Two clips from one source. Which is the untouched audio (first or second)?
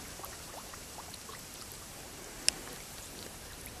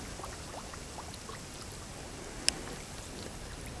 second